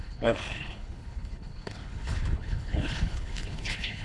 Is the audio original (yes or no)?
no